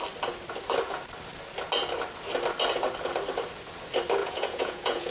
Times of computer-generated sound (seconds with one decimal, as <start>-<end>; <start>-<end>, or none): 4.2-5.1